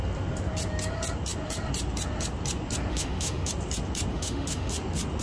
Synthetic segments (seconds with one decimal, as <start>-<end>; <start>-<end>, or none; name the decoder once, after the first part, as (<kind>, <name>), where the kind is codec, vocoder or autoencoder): 2.9-3.5 (autoencoder, DAC-VAE); 4.1-4.7